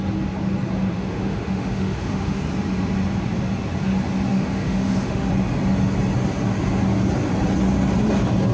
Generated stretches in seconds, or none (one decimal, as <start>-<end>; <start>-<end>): 1.0-2.4; 4.3-5.3